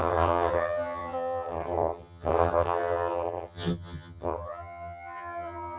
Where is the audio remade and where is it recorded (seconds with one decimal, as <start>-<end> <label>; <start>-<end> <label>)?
0.0-5.8 remade